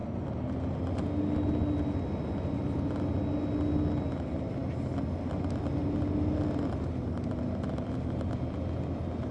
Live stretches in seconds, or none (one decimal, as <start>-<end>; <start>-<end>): 0.0-9.3